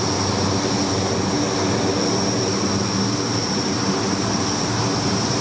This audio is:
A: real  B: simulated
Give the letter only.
A